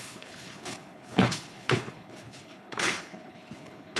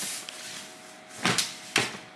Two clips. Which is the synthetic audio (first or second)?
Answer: first